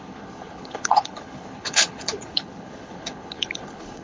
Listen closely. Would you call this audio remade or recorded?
remade